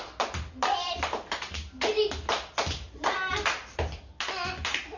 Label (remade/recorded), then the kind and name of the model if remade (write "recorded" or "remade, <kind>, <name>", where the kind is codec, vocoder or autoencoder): recorded